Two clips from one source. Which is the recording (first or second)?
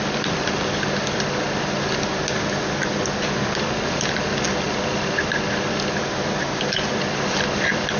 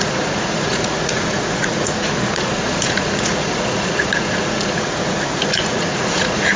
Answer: first